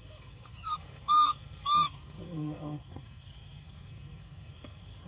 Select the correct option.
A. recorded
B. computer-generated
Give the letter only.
B